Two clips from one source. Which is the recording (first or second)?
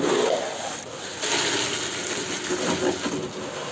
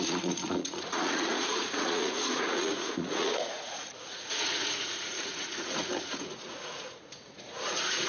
first